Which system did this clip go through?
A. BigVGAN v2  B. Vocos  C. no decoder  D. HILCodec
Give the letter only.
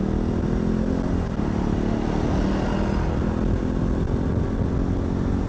C